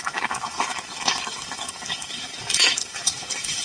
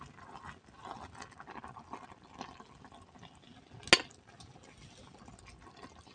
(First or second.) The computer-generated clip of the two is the first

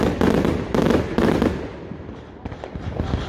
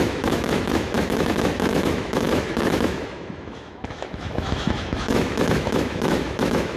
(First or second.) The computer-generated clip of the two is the second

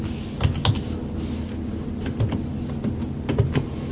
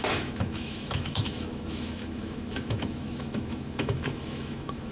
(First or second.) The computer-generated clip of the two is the second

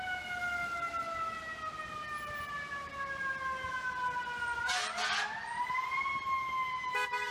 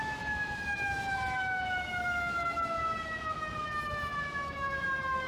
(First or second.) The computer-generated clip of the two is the second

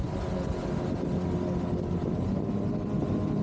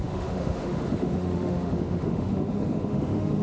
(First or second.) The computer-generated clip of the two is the second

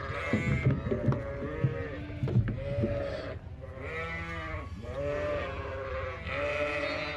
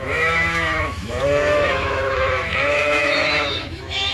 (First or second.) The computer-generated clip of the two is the second